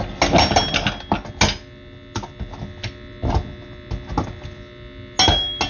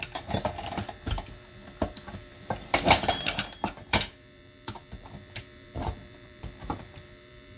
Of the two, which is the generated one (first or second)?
second